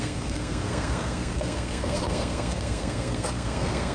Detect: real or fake fake